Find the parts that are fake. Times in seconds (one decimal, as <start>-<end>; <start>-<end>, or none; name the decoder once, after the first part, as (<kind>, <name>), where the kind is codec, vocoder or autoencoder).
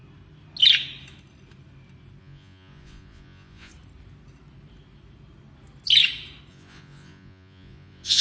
2.2-3.7 (vocoder, Vocos); 6.5-8.2